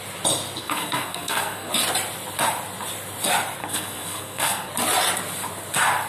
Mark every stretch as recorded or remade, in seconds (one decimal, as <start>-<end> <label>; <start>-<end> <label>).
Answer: 0.0-0.6 recorded; 0.6-1.7 remade; 1.7-3.6 recorded; 3.6-4.7 remade; 4.7-6.1 recorded